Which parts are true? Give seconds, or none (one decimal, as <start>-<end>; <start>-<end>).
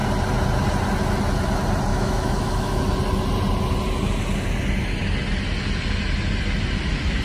0.0-1.9; 2.8-7.2